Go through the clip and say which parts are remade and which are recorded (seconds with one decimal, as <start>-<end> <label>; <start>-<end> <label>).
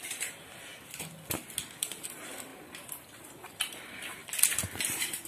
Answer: 0.0-0.7 remade; 0.7-1.8 recorded; 1.8-2.5 remade; 2.5-3.2 recorded; 3.2-4.2 remade; 4.2-4.8 recorded; 4.8-5.3 remade